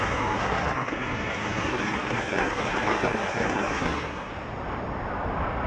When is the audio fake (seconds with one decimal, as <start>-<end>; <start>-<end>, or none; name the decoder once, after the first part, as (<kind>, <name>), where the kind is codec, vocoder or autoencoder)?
0.0-4.3 (codec, SNAC)